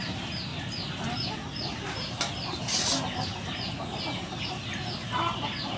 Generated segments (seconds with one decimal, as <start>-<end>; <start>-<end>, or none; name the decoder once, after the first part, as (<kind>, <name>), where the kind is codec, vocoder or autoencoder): none